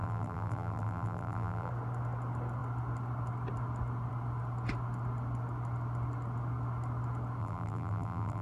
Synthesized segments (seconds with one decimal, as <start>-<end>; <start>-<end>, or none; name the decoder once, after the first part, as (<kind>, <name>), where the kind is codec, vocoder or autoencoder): 0.0-1.7 (vocoder, BigVGAN v2); 7.4-8.4